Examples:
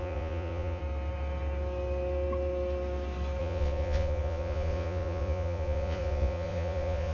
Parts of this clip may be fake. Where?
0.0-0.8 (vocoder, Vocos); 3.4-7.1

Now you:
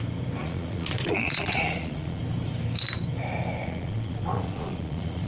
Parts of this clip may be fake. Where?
0.4-2.2 (vocoder, Vocos); 3.6-5.3

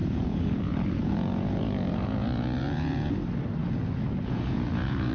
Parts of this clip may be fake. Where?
0.0-3.1 (vocoder, Vocos); 3.6-5.1

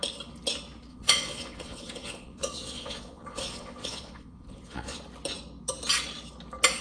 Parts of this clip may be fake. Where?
0.9-5.0 (vocoder, Vocos)

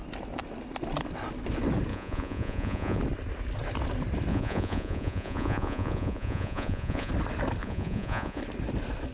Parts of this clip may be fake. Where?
1.9-3.0 (vocoder, Vocos); 4.3-7.1; 7.6-8.4

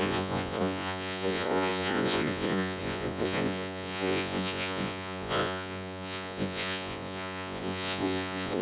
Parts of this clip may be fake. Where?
0.0-8.6 (vocoder, Vocos)

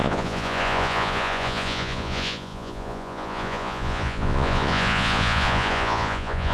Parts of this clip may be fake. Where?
0.0-6.5 (vocoder, Vocos)